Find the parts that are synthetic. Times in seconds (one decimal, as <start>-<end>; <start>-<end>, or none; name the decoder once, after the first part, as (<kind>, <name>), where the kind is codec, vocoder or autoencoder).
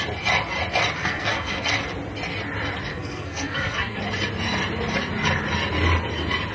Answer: 1.0-1.7 (codec, SNAC); 2.9-4.0